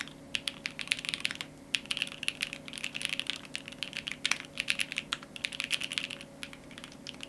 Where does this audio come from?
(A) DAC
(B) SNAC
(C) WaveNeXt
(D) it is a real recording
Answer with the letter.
D